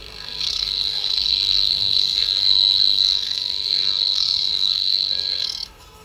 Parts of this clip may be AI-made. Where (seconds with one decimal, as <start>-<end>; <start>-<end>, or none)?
0.0-6.0